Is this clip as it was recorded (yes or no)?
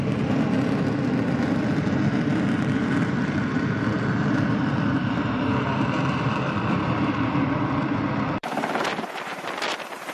no